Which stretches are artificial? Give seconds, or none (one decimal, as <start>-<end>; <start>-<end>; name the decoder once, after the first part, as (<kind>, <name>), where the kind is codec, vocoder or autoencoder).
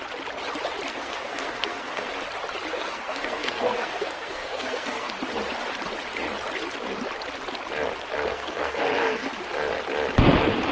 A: 0.9-2.1 (codec, SNAC); 2.7-5.1; 8.3-9.3